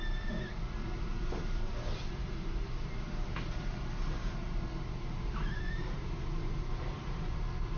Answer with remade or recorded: remade